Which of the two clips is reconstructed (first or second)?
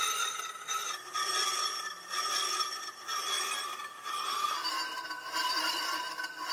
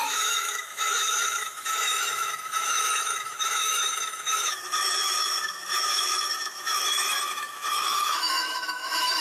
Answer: second